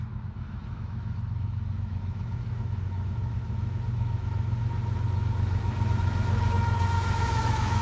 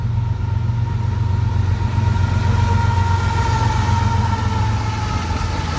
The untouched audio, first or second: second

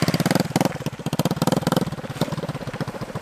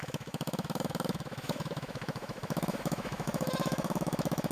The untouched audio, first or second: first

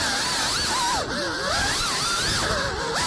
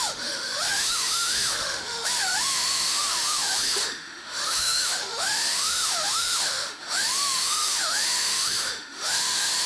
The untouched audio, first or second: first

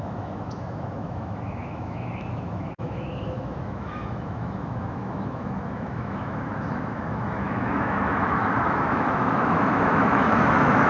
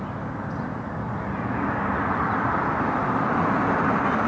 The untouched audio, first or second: second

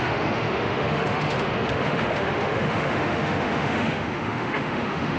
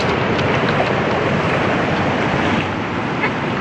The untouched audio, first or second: second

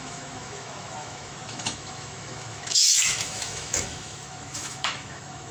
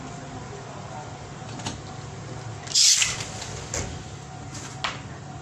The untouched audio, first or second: second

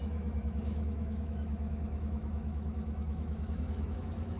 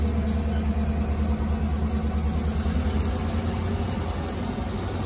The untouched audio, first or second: second